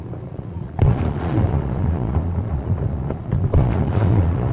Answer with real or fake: fake